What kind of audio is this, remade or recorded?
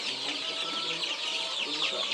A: recorded